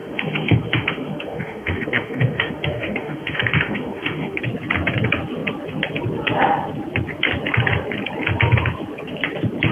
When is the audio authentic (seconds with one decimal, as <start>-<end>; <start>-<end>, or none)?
4.4-9.7